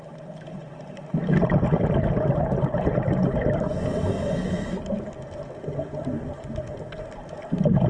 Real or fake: real